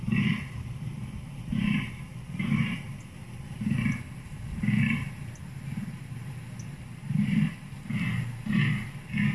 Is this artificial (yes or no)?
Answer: no